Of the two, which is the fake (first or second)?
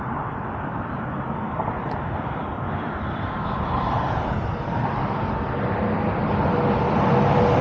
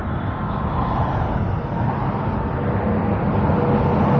first